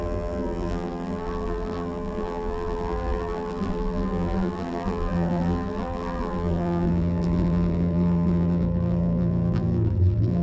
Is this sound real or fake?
fake